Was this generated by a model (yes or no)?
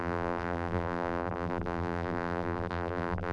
yes